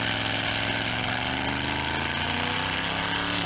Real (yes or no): yes